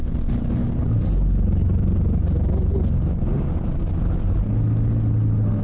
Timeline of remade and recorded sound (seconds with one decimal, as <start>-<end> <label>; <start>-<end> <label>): 0.0-5.6 recorded